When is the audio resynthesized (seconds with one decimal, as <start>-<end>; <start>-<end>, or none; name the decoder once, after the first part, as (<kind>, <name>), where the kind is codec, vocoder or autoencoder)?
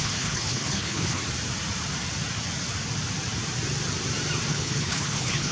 0.0-1.2 (codec, HILCodec); 4.5-5.5